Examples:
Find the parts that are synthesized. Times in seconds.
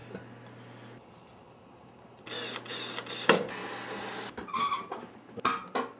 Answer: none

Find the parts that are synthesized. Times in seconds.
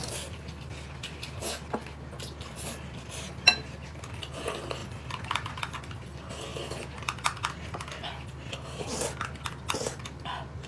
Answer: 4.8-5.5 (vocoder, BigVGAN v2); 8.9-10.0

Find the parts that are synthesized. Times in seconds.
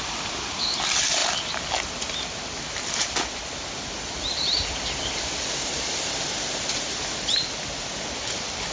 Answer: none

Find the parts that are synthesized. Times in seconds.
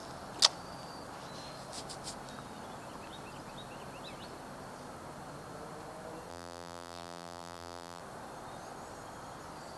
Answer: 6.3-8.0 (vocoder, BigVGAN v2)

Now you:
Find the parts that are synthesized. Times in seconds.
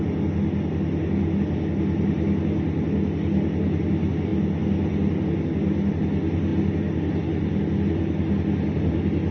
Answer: none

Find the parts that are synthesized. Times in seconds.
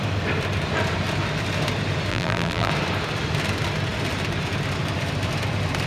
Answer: 2.1-2.7 (vocoder, BigVGAN v2)